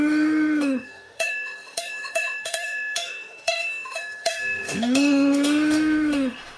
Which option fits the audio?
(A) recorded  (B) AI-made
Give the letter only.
B